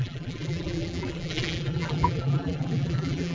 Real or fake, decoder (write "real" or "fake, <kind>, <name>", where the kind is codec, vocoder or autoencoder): fake, vocoder, BigVGAN v2